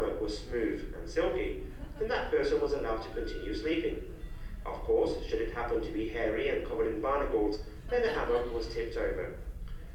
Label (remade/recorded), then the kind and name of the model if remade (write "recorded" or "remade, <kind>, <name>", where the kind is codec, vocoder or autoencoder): remade, vocoder, BigVGAN v2